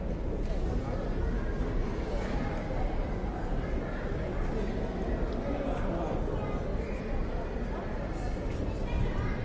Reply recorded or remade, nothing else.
recorded